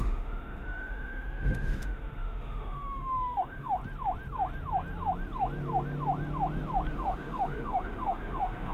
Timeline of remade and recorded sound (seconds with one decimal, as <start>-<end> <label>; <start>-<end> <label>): 0.0-3.8 remade; 3.8-6.9 recorded; 6.9-8.7 remade